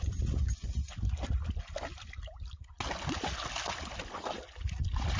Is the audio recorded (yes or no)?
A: yes